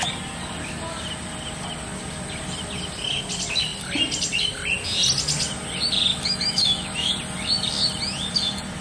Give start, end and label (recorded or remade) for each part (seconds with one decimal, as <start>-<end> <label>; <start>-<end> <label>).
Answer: 0.0-6.1 recorded; 6.1-7.1 remade; 7.1-8.8 recorded